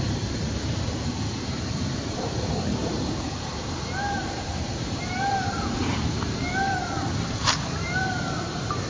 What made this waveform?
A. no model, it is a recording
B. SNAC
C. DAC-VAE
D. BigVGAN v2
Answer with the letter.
D